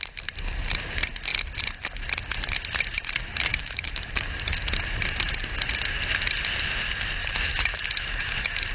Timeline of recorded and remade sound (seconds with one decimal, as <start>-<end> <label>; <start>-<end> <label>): 0.0-3.5 recorded; 3.5-4.4 remade; 4.4-7.2 recorded; 7.2-8.7 remade